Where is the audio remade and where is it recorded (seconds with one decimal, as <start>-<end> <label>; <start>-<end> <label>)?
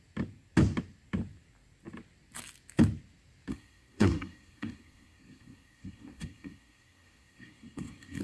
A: 0.0-3.5 recorded; 3.5-8.2 remade